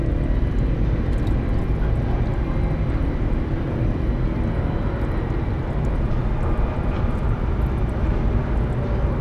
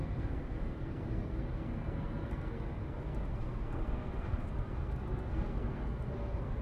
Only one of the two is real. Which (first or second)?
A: first